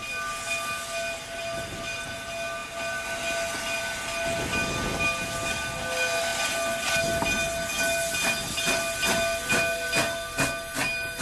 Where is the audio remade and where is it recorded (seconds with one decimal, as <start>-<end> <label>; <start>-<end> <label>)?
0.0-11.2 recorded

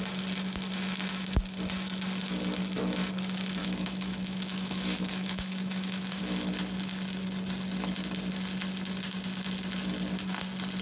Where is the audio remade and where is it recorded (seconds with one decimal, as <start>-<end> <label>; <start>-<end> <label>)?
0.0-3.6 recorded; 3.6-6.2 remade; 6.2-10.8 recorded

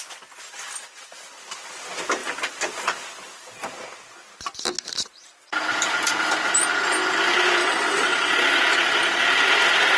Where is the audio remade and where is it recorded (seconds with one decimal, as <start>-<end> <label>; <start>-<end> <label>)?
0.0-7.6 recorded; 7.6-8.3 remade; 8.3-10.0 recorded

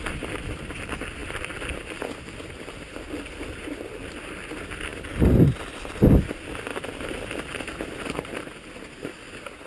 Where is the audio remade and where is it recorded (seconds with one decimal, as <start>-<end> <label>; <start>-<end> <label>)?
0.0-1.2 recorded; 1.2-4.1 remade; 4.1-9.7 recorded

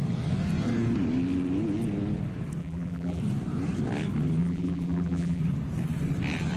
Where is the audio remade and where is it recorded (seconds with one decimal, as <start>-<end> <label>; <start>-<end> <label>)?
0.0-2.6 recorded; 2.6-3.2 remade; 3.2-4.4 recorded; 4.4-5.4 remade; 5.4-6.6 recorded

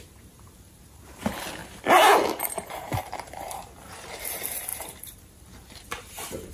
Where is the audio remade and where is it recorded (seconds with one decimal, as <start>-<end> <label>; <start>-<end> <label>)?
0.0-1.6 remade; 1.6-2.7 recorded; 2.7-6.5 remade

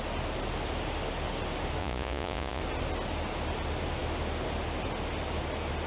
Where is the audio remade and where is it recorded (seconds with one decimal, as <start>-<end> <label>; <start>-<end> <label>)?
0.0-1.8 recorded; 1.8-2.6 remade; 2.6-5.9 recorded